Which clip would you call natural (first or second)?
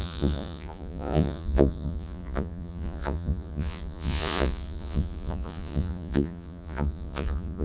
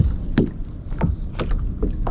second